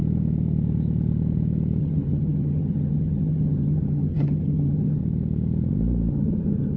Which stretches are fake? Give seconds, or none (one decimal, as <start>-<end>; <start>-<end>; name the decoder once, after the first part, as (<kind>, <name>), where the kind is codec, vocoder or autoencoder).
1.8-5.0 (vocoder, HiFi-GAN); 6.1-6.8